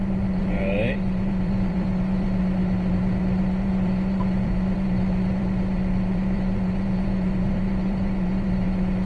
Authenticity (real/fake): fake